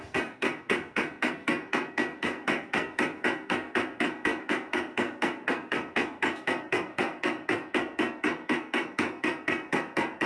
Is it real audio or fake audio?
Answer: fake